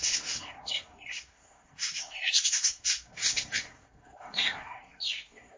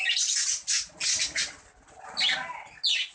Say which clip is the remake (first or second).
first